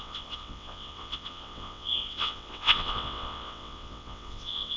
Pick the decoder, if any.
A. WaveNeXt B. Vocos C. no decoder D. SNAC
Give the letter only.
A